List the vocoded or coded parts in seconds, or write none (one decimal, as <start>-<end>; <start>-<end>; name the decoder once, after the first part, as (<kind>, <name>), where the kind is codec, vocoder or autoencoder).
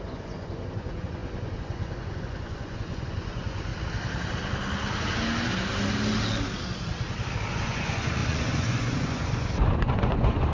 0.0-3.7 (vocoder, Vocos); 7.5-10.5